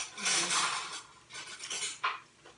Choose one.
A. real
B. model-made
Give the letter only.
A